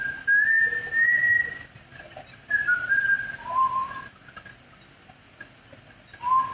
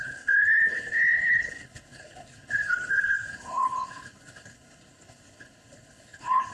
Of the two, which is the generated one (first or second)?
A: second